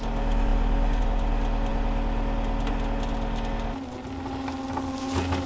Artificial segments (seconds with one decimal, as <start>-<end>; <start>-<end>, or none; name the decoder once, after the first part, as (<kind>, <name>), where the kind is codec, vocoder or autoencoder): none